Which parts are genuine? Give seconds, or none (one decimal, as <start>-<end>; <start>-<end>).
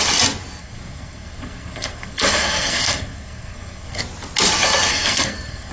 0.0-0.6; 4.0-4.9